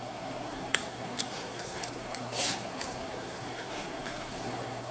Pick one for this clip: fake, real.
fake